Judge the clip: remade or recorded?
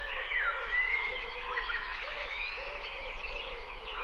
remade